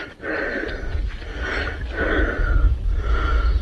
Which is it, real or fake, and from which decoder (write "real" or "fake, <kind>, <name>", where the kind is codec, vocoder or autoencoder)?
real